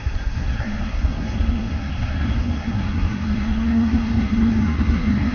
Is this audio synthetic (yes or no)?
yes